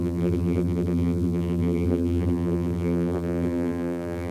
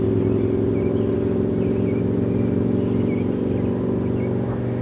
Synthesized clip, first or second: first